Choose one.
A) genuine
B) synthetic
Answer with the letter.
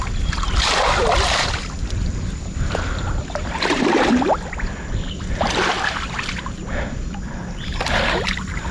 B